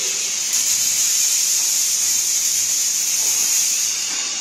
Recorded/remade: remade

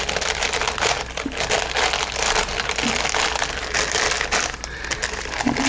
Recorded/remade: recorded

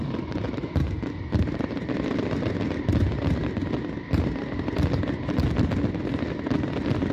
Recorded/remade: recorded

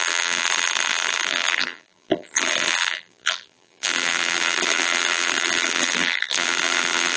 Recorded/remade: remade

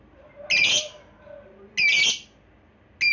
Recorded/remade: recorded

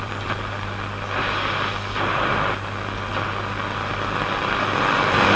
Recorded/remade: remade